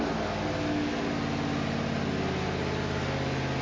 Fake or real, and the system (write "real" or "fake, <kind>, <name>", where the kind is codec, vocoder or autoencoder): real